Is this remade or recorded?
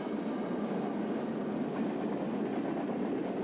recorded